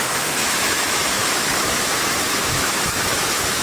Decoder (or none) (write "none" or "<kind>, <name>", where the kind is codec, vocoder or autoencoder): autoencoder, DAC-VAE